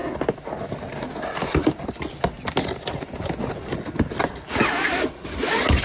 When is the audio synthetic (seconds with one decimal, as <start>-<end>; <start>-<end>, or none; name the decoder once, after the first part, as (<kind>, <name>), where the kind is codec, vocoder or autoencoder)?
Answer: none